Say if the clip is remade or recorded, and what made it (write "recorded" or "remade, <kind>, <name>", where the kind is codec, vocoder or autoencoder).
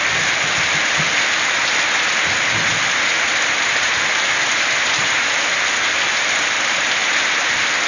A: recorded